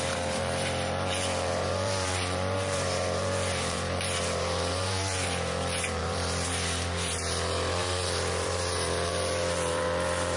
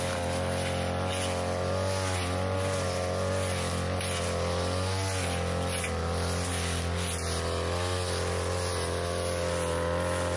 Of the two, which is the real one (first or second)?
second